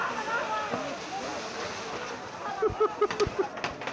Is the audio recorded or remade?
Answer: recorded